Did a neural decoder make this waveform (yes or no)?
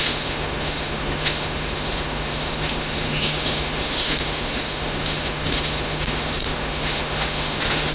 yes